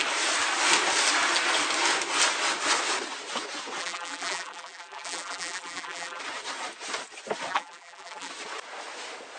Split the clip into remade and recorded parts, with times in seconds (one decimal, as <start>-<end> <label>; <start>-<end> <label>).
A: 0.0-3.8 recorded; 3.8-6.2 remade; 6.2-7.5 recorded; 7.5-8.3 remade; 8.3-9.4 recorded